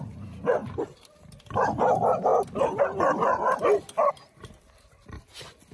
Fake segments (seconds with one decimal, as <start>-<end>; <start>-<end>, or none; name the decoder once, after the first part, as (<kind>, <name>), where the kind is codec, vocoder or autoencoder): 0.6-1.1 (vocoder, BigVGAN v2)